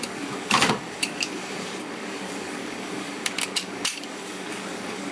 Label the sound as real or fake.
fake